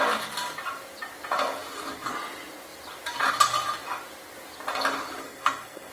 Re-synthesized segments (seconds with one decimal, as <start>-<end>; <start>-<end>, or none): 5.2-5.9